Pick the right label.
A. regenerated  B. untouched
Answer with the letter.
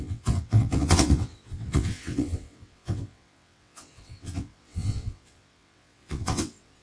A